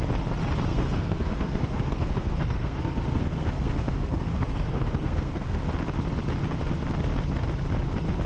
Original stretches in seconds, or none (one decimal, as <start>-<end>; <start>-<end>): 0.0-0.7; 5.7-8.3